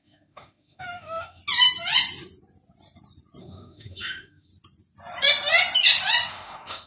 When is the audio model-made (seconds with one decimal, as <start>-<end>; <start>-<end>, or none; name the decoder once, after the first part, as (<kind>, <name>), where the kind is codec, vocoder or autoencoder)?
0.0-1.4 (autoencoder, DAC-VAE); 3.4-4.5; 6.3-6.9